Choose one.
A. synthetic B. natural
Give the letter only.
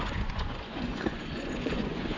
A